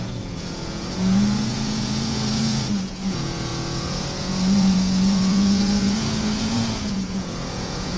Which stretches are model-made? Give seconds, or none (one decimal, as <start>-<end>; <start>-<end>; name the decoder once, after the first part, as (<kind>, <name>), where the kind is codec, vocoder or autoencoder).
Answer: 0.0-8.0 (vocoder, Vocos)